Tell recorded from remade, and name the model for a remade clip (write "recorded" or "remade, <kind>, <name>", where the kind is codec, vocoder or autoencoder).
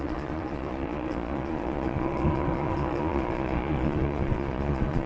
remade, vocoder, Vocos